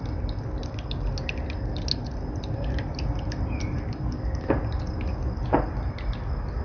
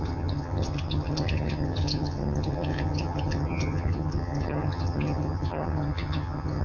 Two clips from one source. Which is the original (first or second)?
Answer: first